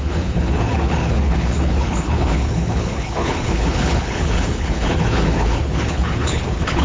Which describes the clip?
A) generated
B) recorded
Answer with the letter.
A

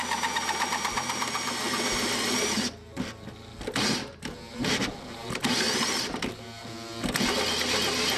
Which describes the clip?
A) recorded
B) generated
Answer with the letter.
A